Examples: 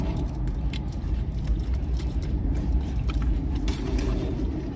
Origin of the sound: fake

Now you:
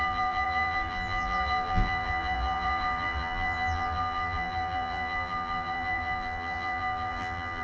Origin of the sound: fake